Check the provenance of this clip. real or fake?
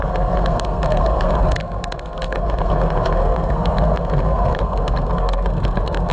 fake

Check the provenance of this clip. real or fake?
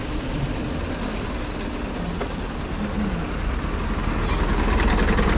real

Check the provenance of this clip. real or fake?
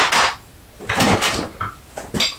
real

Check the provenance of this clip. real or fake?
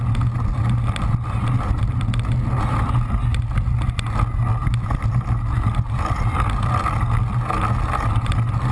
real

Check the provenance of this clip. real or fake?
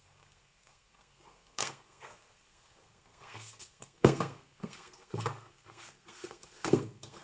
fake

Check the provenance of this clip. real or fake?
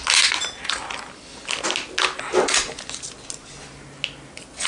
real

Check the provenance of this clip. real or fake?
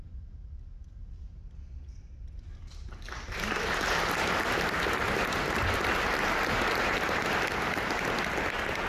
real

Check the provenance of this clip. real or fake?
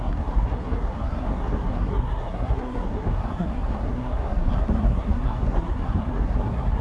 fake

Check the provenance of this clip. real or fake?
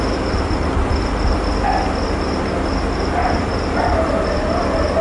real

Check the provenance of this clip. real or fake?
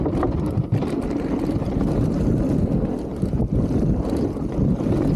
real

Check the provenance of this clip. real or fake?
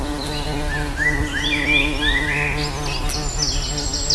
real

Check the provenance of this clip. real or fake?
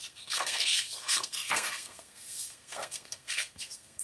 fake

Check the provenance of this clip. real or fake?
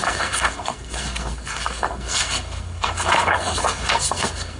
fake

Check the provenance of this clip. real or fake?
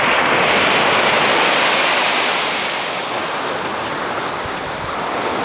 real